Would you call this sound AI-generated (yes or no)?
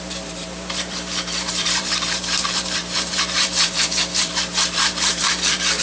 yes